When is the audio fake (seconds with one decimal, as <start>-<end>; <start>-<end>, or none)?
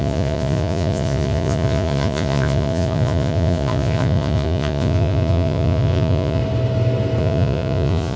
0.0-6.4; 7.2-8.2